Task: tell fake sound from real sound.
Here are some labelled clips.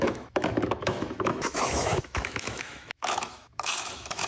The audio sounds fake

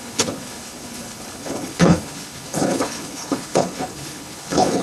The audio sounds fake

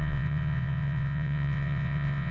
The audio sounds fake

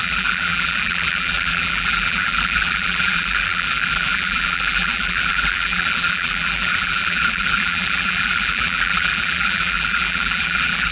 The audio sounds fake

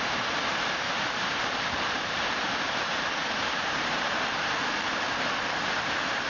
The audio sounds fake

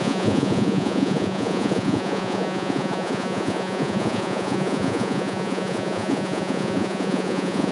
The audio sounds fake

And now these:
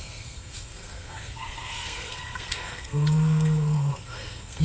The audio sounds fake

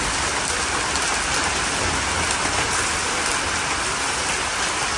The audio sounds real